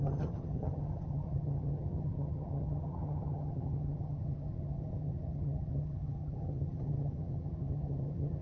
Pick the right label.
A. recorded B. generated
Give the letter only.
B